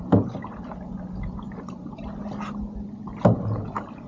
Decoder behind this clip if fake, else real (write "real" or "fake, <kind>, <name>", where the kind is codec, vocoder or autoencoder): real